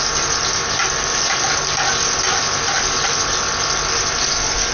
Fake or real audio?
real